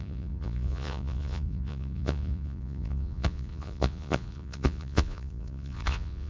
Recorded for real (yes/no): no